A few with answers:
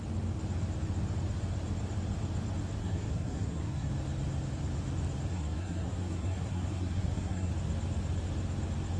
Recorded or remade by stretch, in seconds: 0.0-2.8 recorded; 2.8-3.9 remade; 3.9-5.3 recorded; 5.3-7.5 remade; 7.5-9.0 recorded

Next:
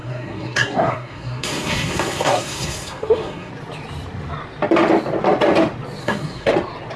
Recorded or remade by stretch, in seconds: 0.0-3.5 remade; 3.5-6.0 recorded; 6.0-6.5 remade; 6.5-7.0 recorded